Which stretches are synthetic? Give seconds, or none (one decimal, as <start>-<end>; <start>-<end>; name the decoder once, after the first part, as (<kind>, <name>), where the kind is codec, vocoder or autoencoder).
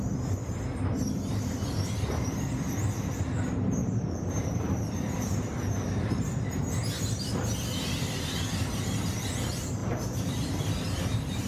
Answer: 3.8-8.8 (vocoder, BigVGAN v2); 9.8-11.5